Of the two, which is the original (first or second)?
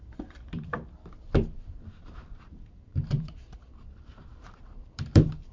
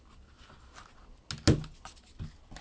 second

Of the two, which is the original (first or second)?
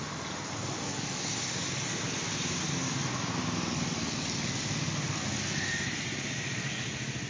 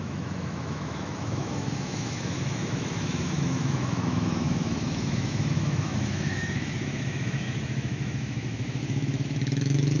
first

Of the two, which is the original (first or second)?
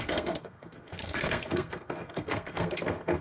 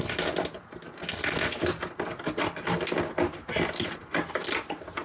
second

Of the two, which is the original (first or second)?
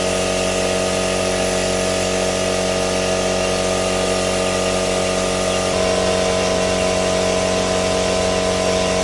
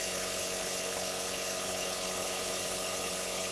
first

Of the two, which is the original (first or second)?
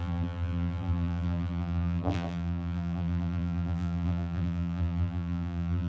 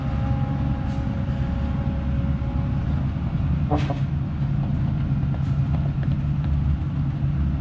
second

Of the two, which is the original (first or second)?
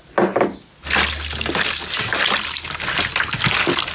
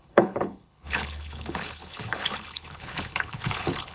first